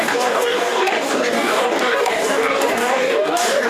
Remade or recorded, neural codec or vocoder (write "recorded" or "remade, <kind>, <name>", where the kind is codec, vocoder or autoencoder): remade, codec, DAC